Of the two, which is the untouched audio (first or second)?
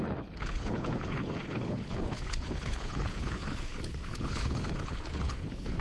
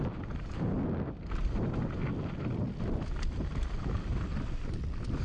second